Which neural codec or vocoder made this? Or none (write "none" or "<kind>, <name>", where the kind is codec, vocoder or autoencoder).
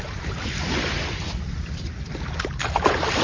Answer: vocoder, BigVGAN v2